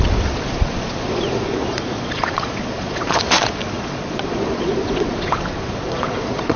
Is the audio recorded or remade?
remade